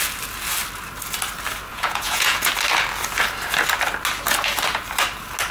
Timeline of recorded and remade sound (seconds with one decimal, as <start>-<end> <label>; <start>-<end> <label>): 0.0-1.7 recorded; 1.7-2.5 remade; 2.5-5.5 recorded